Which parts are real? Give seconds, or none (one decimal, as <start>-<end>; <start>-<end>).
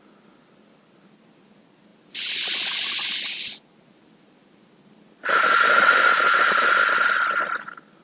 0.0-8.0